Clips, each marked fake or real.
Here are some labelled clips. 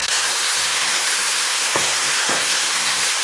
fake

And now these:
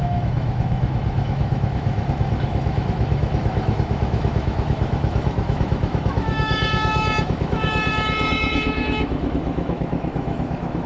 fake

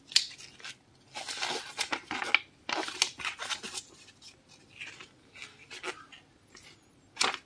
real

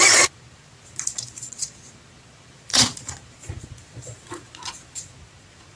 fake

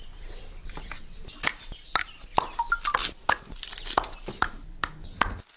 real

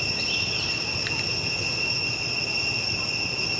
real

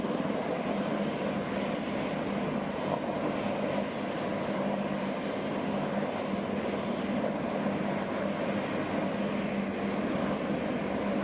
real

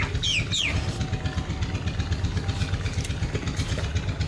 real